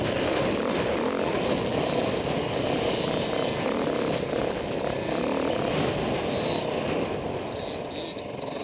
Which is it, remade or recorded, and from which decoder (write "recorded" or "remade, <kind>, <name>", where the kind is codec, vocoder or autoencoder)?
recorded